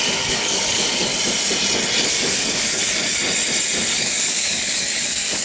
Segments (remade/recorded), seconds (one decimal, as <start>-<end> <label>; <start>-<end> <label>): 0.0-1.1 remade; 1.1-2.1 recorded; 2.1-3.2 remade; 3.2-3.9 recorded; 3.9-5.4 remade